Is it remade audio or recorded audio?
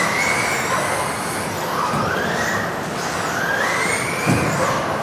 recorded